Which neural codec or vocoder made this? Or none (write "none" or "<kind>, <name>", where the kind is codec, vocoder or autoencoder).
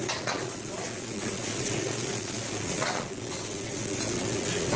vocoder, Vocos